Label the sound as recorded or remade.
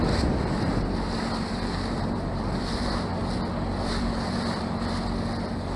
remade